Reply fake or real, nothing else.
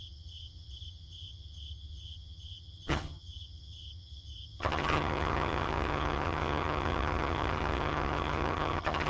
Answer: fake